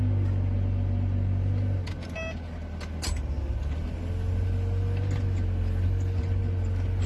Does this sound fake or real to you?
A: real